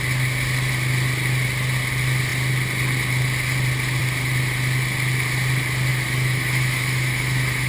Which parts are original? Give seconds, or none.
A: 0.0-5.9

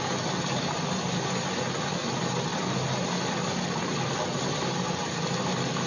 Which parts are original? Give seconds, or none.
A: 0.0-2.5; 5.0-5.9

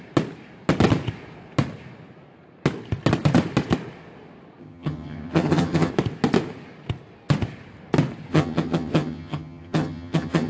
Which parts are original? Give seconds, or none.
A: 0.0-4.6; 5.9-8.3

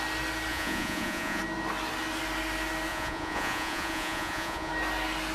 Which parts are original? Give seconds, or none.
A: 0.0-0.5; 1.4-2.9; 4.7-5.3

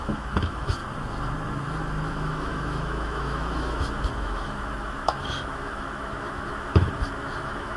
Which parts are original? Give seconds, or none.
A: 0.8-2.1

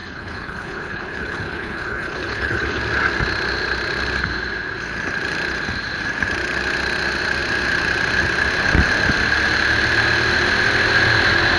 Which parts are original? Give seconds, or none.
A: 2.8-11.6

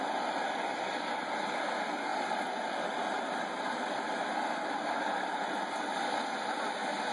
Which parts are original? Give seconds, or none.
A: 0.0-2.1; 5.6-7.1